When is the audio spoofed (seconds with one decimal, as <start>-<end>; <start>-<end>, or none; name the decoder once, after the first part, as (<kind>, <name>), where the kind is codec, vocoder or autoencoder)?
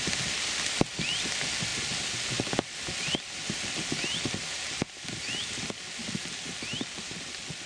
none